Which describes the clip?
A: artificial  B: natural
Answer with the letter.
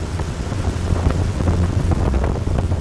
A